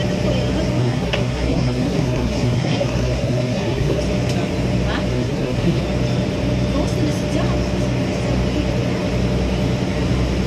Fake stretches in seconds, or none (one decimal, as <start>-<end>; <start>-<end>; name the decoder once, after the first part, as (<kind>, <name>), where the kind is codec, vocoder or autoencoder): 0.8-4.0 (codec, SNAC); 5.1-5.8